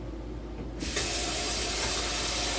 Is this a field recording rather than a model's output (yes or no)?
yes